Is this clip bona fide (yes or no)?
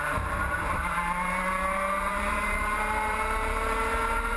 no